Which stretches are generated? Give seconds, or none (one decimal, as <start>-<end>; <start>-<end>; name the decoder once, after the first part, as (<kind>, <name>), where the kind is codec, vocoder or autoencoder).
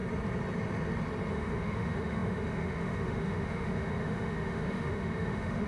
1.3-5.7 (autoencoder, DAC-VAE)